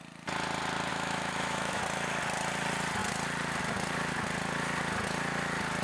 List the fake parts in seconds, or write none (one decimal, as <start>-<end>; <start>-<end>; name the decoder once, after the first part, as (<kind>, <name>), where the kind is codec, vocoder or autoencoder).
0.9-1.8 (autoencoder, DAC-VAE)